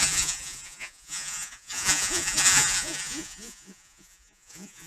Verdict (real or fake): fake